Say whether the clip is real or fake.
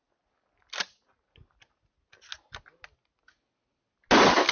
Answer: real